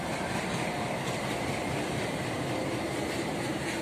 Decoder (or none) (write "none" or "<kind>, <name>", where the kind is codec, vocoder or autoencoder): none